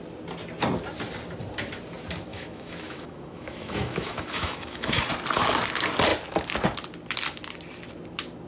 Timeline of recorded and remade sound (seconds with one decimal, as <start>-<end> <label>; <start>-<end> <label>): 0.0-2.3 recorded; 2.3-5.0 remade; 5.0-8.5 recorded